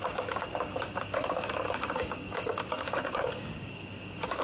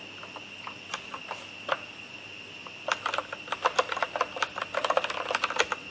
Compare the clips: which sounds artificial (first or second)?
first